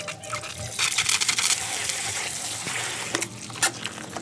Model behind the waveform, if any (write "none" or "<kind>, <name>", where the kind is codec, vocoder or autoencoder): none